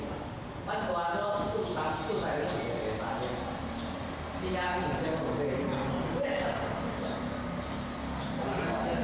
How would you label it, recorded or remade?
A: recorded